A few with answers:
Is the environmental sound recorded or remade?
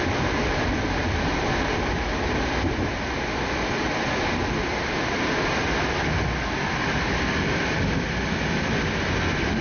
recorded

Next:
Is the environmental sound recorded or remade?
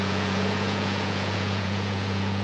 remade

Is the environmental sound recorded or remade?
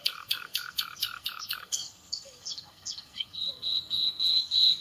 remade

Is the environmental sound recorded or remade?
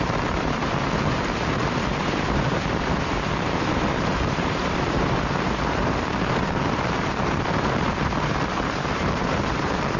remade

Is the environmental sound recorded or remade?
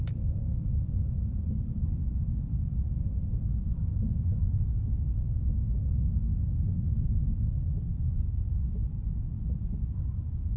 recorded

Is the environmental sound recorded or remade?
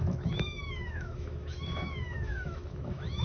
remade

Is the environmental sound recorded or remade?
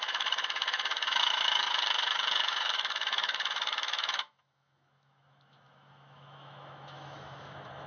remade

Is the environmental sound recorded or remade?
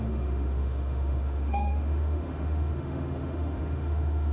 remade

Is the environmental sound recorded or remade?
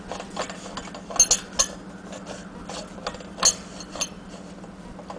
recorded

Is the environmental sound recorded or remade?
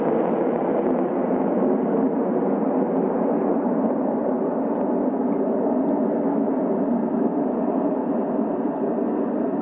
recorded